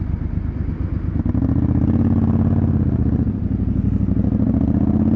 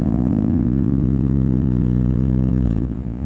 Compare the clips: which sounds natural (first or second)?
first